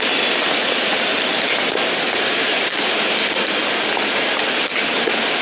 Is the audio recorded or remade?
recorded